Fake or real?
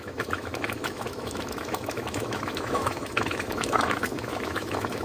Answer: fake